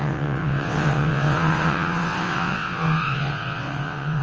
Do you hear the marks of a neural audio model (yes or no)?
yes